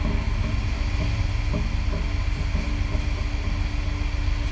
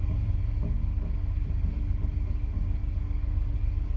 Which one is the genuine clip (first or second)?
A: first